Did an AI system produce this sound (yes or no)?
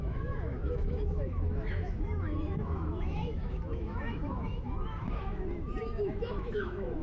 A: yes